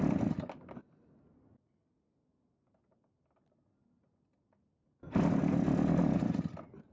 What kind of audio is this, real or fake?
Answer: real